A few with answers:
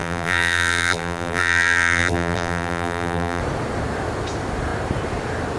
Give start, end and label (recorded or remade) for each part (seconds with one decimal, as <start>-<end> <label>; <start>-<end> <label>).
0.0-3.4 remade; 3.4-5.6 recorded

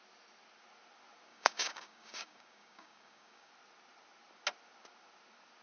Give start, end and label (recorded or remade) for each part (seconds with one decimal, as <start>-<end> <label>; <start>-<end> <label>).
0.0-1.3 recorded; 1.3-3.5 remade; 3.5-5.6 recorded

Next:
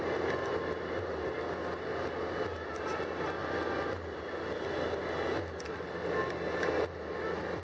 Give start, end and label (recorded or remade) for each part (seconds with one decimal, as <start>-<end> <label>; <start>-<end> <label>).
0.0-7.6 recorded

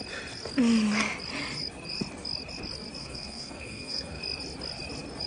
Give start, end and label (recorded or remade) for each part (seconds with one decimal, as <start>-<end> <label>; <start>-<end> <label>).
0.0-3.0 recorded; 3.0-4.2 remade; 4.2-5.3 recorded

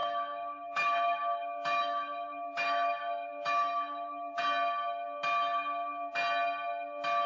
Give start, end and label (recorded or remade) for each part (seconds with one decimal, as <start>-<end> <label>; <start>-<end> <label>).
0.0-4.4 remade; 4.4-7.3 recorded

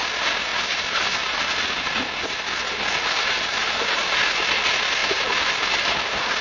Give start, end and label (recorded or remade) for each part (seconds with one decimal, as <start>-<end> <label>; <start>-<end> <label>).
0.0-6.4 recorded